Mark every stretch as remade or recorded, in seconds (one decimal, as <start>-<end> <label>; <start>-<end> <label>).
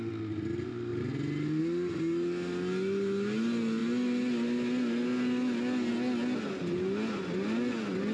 0.0-8.1 recorded